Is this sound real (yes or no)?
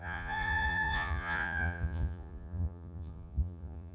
no